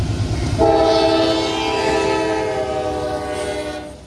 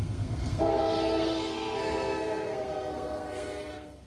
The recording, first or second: first